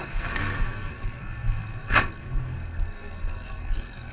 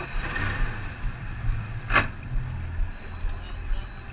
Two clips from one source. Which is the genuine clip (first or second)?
second